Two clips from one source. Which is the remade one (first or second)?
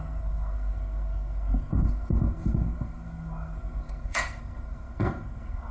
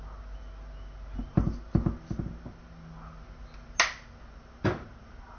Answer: first